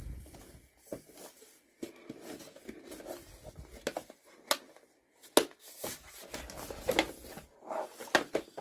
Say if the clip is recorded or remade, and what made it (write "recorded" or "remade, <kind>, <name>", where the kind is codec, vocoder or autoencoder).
recorded